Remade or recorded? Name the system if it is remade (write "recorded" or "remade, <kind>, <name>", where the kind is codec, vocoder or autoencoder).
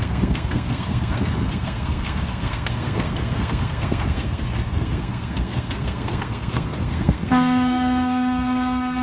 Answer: remade, codec, SNAC